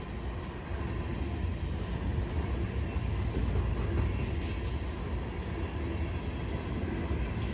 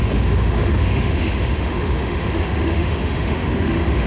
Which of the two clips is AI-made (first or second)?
second